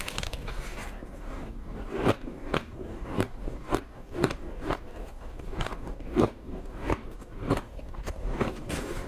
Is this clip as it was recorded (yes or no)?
no